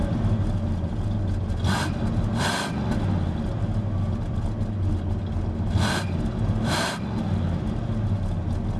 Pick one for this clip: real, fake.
real